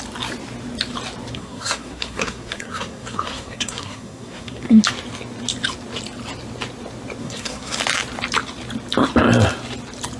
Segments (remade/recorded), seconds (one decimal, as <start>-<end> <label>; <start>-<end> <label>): 0.0-1.3 recorded; 1.3-4.8 remade; 4.8-7.2 recorded; 7.2-7.8 remade; 7.8-10.2 recorded